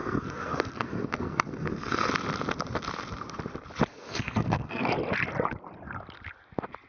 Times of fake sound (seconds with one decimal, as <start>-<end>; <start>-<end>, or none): 0.0-2.1; 3.9-4.9